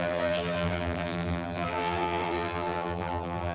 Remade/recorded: remade